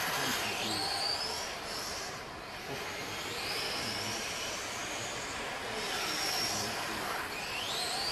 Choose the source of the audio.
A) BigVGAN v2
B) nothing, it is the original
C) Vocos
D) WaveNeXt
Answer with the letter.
B